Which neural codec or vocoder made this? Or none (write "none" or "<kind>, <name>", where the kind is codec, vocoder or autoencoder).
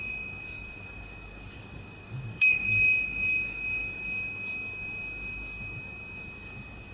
codec, DAC